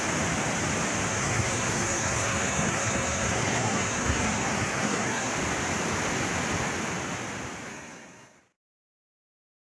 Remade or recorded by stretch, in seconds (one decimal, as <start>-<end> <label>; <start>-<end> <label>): 0.0-1.1 recorded; 1.1-5.3 remade; 5.3-7.7 recorded; 7.7-8.4 remade; 8.4-9.7 recorded